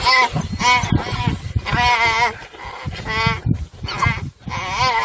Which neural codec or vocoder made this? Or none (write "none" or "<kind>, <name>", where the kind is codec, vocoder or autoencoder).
none